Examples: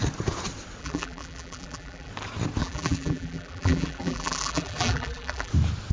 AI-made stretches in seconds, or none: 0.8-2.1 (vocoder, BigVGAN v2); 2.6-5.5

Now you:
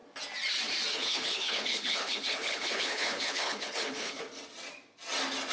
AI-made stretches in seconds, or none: 0.9-4.2 (codec, HILCodec)

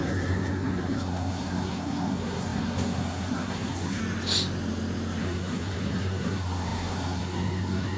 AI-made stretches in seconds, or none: 0.0-4.0 (codec, SNAC); 5.2-8.0

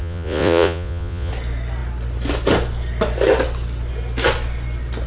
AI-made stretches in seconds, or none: 0.0-1.3 (vocoder, Vocos)

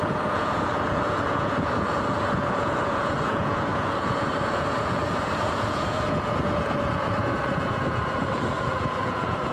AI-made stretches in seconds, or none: 0.0-9.5 (vocoder, Vocos)

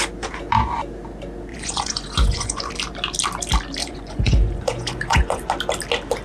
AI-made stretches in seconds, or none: 1.5-2.7 (vocoder, Vocos); 3.8-5.4

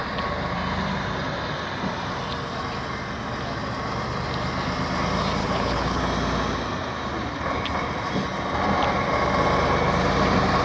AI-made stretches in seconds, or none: 5.4-6.0 (codec, HILCodec)

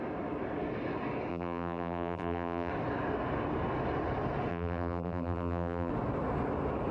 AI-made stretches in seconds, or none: 1.3-2.7 (vocoder, BigVGAN v2); 4.5-5.9